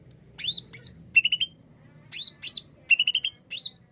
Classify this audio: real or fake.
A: real